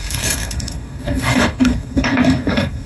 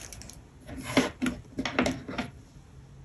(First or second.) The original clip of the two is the second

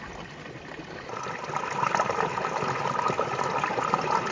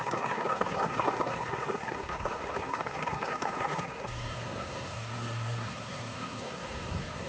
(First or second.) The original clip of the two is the first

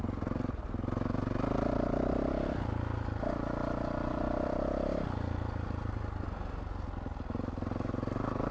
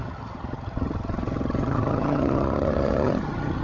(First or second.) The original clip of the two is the first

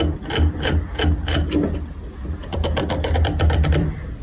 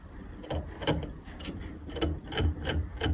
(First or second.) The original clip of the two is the first